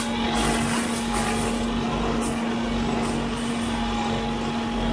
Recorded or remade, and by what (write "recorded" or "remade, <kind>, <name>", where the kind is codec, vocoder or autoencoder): recorded